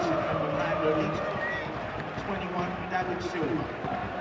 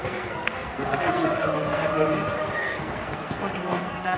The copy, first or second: second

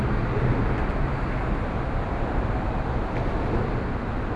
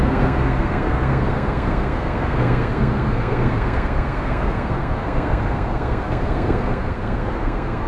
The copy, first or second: second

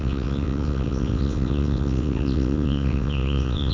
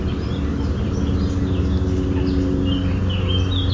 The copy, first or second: first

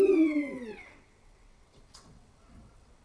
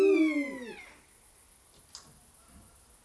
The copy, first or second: first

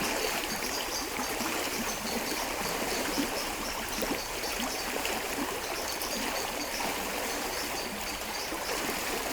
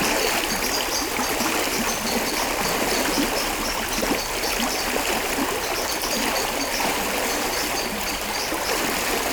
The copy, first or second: first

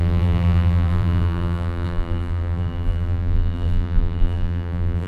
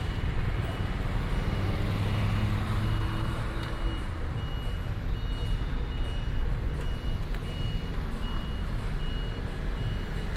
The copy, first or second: first